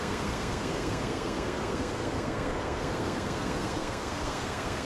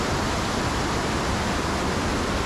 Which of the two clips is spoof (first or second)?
first